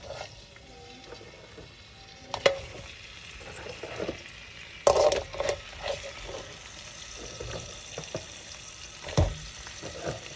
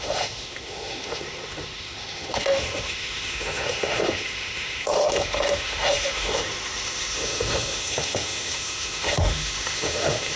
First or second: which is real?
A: first